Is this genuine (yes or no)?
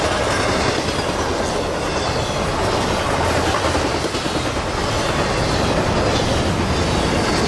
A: yes